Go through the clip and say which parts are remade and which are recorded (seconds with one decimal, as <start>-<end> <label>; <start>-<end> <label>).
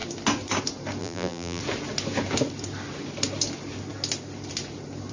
0.0-1.0 recorded; 1.0-1.6 remade; 1.6-5.1 recorded